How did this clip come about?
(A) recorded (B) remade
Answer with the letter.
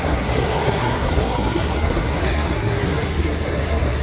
B